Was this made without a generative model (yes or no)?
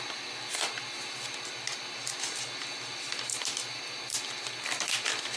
yes